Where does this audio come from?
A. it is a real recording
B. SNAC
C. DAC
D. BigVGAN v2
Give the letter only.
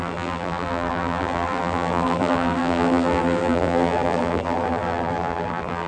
D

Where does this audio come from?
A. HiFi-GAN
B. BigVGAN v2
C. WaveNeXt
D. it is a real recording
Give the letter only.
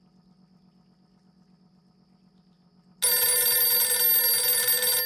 D